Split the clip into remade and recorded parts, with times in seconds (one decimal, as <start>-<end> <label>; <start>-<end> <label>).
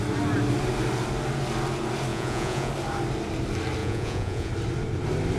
0.0-2.1 recorded; 2.1-2.7 remade; 2.7-3.8 recorded; 3.8-4.5 remade; 4.5-5.4 recorded